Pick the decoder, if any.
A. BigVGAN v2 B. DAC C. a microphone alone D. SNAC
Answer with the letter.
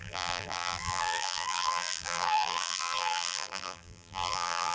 A